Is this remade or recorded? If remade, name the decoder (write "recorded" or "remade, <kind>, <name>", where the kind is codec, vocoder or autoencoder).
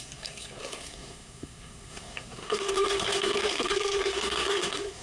remade, codec, SNAC